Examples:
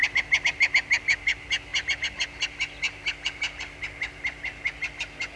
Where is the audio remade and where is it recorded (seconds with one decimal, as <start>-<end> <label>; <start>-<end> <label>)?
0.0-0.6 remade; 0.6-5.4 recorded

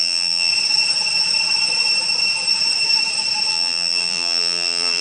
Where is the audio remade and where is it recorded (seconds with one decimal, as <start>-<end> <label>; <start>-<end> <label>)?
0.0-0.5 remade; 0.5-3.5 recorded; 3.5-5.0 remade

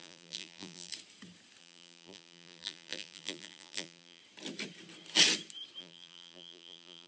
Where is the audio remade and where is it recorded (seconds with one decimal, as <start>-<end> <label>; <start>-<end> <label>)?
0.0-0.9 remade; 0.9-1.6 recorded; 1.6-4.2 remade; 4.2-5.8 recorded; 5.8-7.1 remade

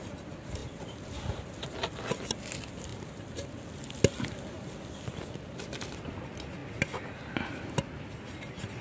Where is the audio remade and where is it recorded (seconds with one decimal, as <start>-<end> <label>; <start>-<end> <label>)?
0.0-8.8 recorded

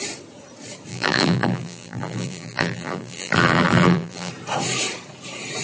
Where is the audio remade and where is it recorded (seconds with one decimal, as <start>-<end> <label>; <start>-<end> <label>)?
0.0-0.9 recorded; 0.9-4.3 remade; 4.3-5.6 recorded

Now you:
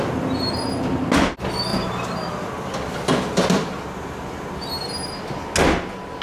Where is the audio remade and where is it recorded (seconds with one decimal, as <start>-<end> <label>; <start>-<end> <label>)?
0.0-1.7 recorded; 1.7-2.9 remade; 2.9-6.2 recorded

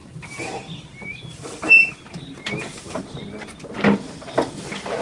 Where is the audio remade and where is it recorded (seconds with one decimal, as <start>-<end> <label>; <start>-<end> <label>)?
0.0-5.0 remade

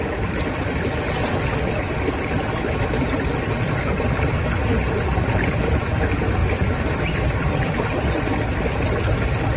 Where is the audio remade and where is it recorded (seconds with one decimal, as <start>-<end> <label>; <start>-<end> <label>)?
0.0-9.6 recorded